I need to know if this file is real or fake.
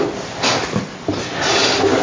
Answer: real